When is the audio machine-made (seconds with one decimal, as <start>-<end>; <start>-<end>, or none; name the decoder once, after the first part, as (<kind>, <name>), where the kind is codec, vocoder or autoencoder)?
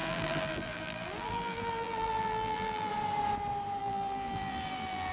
0.0-2.9 (vocoder, BigVGAN v2); 3.8-5.1